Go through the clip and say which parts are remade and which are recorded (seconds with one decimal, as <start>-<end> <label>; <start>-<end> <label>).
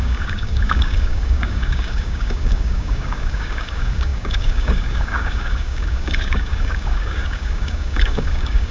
0.0-8.7 remade